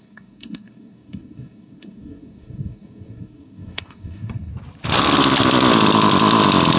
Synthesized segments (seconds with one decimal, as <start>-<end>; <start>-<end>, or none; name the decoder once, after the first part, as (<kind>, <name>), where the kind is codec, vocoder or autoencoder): 0.0-4.5 (codec, SNAC)

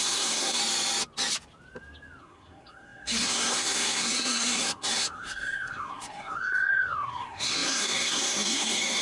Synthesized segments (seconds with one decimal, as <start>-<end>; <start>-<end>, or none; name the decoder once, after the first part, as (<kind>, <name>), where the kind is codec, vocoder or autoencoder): 0.0-0.6 (codec, SNAC); 2.2-9.0

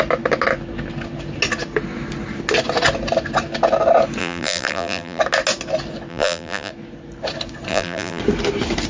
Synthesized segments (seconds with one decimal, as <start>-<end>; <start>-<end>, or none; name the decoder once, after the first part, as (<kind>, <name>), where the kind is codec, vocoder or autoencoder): 4.2-5.2 (vocoder, BigVGAN v2); 6.1-6.7; 7.7-8.2

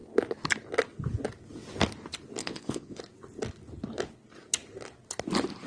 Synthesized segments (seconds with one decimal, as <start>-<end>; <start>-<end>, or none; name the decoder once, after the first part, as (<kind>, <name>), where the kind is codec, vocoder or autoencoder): 2.4-3.0 (vocoder, Vocos)